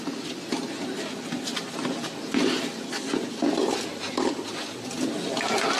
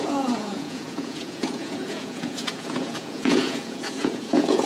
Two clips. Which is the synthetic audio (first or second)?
second